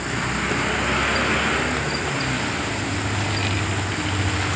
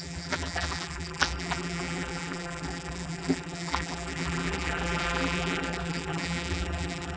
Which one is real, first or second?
first